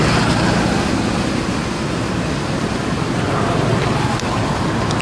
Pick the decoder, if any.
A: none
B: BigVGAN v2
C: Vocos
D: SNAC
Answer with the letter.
A